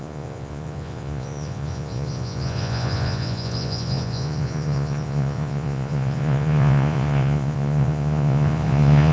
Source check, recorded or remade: remade